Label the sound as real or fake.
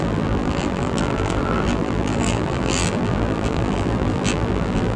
fake